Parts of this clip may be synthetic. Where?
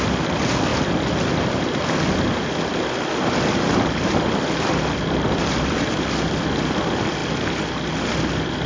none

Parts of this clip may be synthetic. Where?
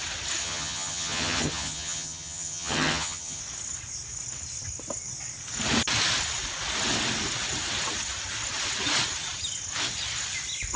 0.4-3.4 (vocoder, HiFi-GAN)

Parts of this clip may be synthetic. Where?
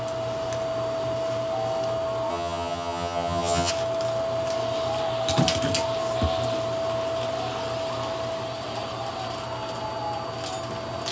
2.3-3.7 (vocoder, HiFi-GAN)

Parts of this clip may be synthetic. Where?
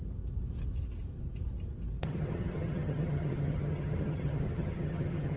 2.0-5.4 (vocoder, HiFi-GAN)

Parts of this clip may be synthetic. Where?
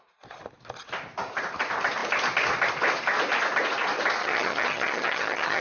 4.2-5.6 (vocoder, HiFi-GAN)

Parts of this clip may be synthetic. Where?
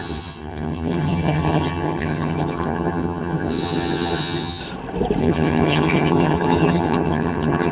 0.0-4.6 (vocoder, HiFi-GAN); 5.2-7.7